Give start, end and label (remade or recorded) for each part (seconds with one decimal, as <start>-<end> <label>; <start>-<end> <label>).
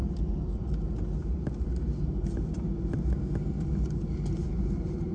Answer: 0.0-4.4 recorded; 4.4-5.1 remade